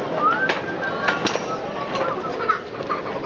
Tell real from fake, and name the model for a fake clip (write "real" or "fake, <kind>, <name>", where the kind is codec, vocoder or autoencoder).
real